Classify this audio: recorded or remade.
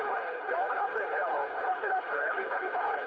remade